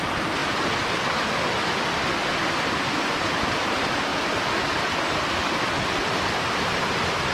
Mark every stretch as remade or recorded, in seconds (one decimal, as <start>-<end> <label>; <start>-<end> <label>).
0.0-7.3 recorded